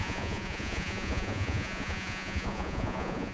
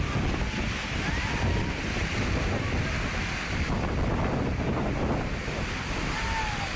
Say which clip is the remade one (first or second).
first